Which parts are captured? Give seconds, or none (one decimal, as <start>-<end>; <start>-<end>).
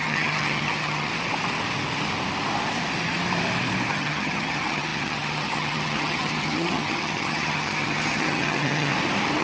1.1-3.9; 8.9-9.4